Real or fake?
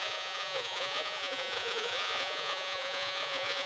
fake